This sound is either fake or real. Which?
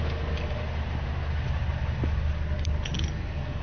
real